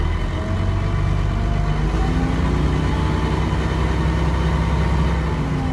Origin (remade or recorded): recorded